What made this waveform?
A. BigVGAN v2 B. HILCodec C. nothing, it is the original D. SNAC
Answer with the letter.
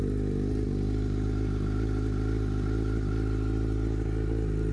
C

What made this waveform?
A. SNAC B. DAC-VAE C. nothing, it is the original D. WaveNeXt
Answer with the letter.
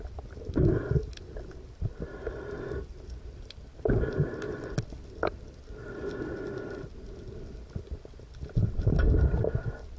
C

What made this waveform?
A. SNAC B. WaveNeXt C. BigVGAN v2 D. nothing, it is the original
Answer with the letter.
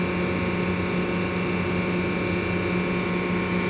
D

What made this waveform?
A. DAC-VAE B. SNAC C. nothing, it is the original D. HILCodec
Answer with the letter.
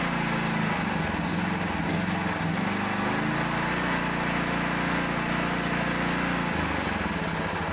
C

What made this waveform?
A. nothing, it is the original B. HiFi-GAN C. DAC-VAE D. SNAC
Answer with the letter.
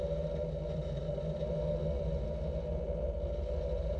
A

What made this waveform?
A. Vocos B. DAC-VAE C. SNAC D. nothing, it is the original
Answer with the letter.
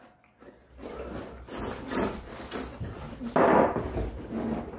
D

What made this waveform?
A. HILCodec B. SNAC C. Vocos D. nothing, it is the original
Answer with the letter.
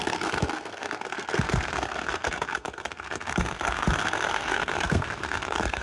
B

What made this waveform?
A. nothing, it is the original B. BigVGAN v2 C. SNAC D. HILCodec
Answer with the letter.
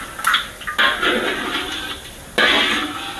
A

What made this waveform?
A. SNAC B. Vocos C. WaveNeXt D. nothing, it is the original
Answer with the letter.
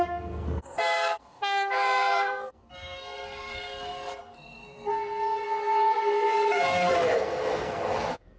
A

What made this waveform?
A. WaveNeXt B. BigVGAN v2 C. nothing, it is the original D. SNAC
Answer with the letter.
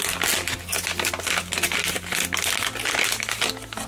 C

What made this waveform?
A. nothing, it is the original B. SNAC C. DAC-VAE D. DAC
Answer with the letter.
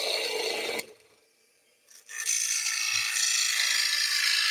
A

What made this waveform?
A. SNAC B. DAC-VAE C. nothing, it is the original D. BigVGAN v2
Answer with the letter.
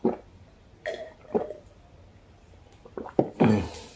C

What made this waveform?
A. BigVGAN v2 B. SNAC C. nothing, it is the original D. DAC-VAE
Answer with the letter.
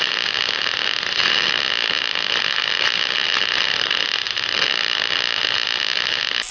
C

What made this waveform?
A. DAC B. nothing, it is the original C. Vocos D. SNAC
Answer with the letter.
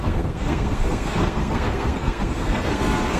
D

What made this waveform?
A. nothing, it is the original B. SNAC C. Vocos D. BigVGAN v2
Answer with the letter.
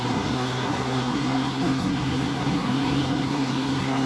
B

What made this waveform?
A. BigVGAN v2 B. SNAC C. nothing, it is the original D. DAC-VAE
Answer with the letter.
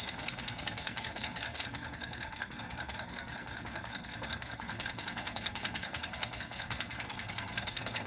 B